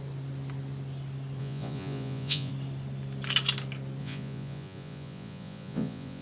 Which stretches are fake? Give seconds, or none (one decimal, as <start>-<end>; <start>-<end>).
1.4-2.5; 4.0-6.2